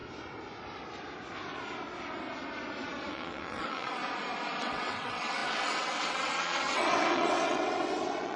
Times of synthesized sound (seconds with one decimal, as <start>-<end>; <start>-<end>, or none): 3.1-4.0; 4.6-8.4